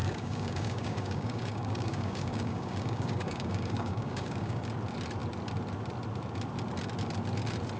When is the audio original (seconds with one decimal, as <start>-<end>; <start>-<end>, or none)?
4.6-7.8